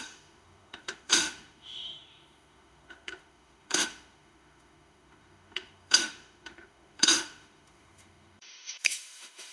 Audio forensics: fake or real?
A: fake